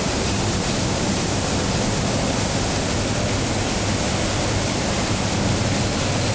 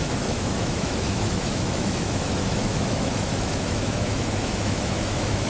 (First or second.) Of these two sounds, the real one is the first